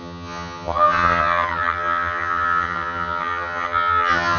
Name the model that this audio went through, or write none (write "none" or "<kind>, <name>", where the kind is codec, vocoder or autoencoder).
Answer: vocoder, HiFi-GAN